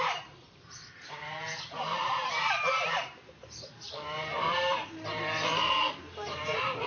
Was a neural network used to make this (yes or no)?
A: yes